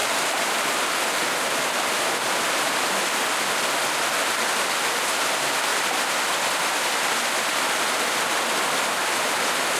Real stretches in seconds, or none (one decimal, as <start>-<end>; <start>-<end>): 4.5-5.3